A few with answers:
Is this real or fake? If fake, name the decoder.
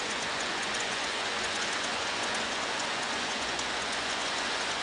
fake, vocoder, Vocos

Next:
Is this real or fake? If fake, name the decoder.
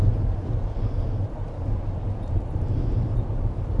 real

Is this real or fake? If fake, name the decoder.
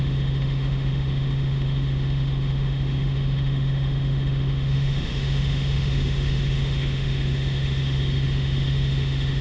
fake, autoencoder, DAC-VAE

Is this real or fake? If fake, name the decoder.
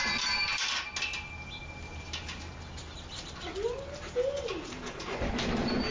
real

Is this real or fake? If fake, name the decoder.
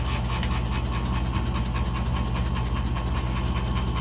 real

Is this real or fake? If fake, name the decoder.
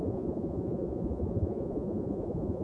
fake, vocoder, Vocos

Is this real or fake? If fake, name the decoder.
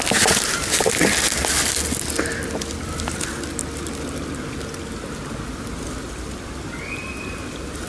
real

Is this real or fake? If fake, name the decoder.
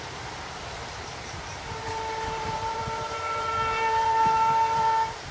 fake, vocoder, BigVGAN v2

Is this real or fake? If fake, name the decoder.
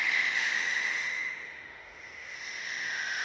fake, autoencoder, DAC-VAE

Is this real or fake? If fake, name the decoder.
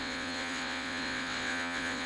fake, vocoder, WaveNeXt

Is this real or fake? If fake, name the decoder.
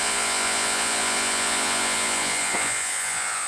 fake, vocoder, Vocos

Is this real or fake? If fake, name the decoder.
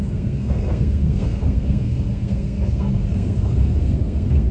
fake, codec, SNAC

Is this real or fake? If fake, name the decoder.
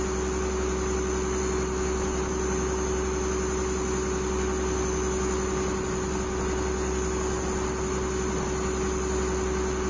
real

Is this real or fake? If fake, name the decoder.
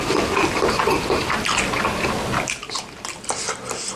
real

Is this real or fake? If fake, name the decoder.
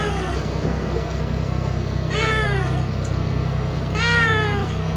fake, codec, SNAC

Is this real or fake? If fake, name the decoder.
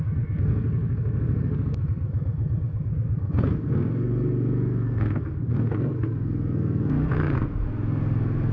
fake, codec, SNAC